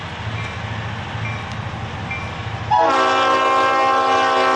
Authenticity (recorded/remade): recorded